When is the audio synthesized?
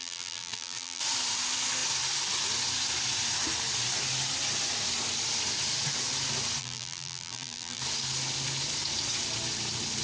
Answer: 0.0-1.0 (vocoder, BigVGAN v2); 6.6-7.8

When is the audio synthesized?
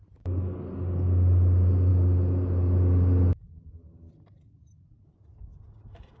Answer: none